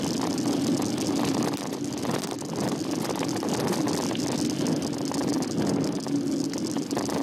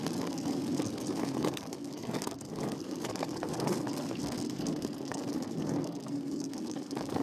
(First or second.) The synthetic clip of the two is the second